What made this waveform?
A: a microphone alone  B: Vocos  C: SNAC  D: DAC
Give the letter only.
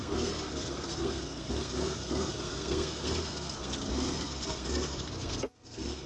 C